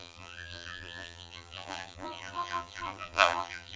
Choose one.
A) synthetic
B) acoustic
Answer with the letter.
A